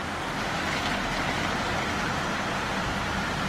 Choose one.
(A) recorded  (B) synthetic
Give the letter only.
A